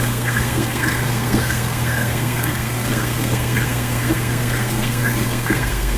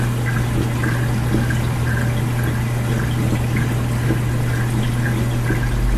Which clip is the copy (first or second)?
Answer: first